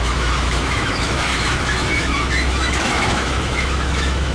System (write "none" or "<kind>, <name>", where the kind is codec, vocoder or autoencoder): autoencoder, DAC-VAE